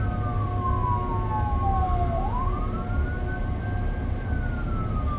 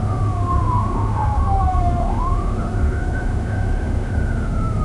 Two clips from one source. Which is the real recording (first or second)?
first